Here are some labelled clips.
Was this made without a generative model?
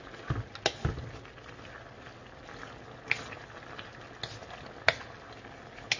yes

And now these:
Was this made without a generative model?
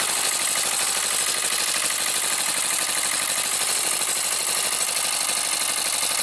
yes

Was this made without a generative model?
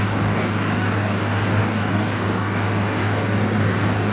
no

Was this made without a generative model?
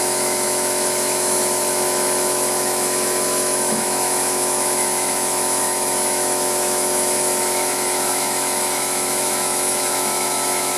no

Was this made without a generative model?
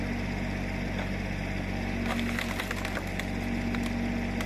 yes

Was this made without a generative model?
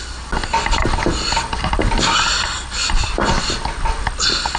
yes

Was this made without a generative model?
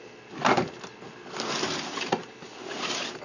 yes